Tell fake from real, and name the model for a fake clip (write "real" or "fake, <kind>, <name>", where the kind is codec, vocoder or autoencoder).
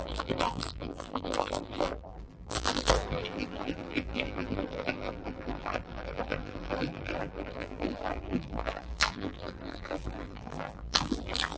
fake, vocoder, BigVGAN v2